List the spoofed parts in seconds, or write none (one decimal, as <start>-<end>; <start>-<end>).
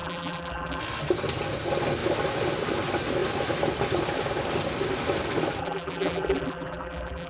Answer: 0.0-0.8; 5.6-7.3